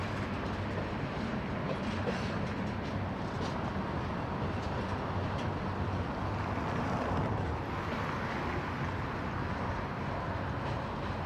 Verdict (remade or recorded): recorded